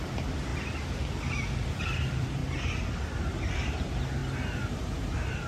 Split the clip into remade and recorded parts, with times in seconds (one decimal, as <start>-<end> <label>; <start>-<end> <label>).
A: 0.0-0.5 remade; 0.5-1.8 recorded; 1.8-2.4 remade; 2.4-3.7 recorded; 3.7-4.2 remade; 4.2-4.7 recorded; 4.7-5.5 remade